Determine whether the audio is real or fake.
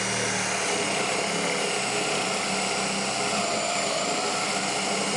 real